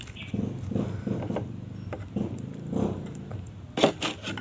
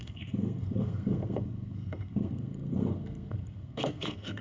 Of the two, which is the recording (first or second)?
first